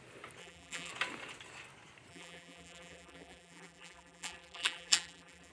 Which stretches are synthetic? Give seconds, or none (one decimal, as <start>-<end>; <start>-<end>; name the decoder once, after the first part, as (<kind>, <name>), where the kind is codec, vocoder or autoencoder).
0.4-0.9 (vocoder, BigVGAN v2); 2.1-5.5

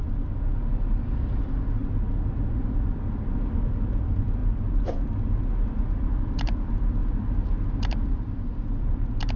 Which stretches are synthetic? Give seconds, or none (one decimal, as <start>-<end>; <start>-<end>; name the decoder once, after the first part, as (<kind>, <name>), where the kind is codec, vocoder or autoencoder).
0.0-1.8 (vocoder, BigVGAN v2); 2.5-4.4; 5.8-9.4

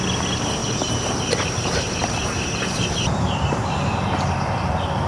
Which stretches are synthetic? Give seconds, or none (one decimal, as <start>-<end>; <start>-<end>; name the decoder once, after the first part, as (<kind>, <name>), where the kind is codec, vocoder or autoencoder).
0.6-3.7 (vocoder, BigVGAN v2)

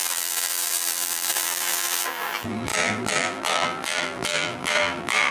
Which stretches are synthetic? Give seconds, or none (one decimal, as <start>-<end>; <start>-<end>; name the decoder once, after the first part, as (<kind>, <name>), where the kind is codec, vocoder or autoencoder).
0.0-5.3 (vocoder, BigVGAN v2)

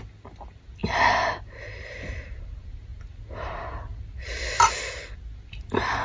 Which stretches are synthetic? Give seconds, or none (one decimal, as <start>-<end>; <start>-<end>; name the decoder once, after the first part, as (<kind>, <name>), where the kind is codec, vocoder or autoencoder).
0.8-2.3 (vocoder, BigVGAN v2)

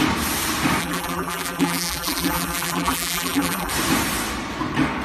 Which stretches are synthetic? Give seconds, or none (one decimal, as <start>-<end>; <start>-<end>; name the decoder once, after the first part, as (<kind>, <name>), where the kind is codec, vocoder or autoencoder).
0.8-3.7 (vocoder, BigVGAN v2)

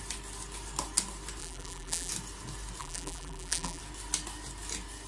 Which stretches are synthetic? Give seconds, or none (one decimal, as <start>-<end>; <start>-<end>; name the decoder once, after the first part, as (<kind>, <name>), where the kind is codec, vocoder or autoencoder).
1.4-2.1 (vocoder, BigVGAN v2); 2.8-3.8

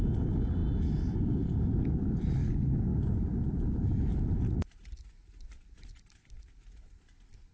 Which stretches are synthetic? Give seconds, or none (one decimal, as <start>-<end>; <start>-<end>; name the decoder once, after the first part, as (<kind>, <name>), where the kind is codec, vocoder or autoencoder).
4.1-4.8 (vocoder, BigVGAN v2)